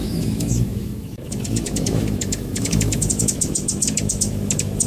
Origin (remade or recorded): remade